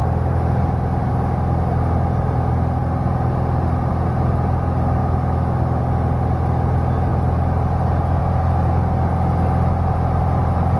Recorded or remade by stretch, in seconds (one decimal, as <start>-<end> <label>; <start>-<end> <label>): 0.0-5.0 recorded; 5.0-5.8 remade; 5.8-10.8 recorded